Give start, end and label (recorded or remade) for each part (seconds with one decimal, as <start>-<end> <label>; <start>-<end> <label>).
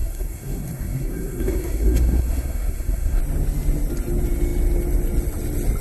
0.0-3.2 remade; 3.2-5.8 recorded